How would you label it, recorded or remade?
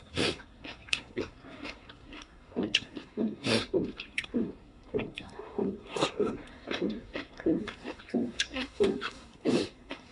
remade